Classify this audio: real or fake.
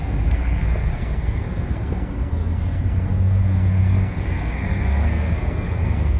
fake